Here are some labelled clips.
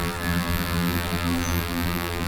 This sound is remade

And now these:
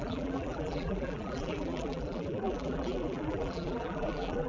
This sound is remade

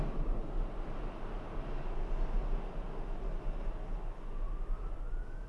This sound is recorded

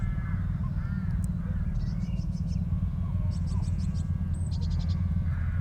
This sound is recorded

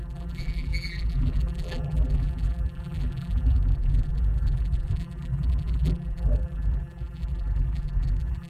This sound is remade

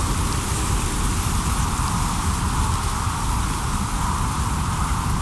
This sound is recorded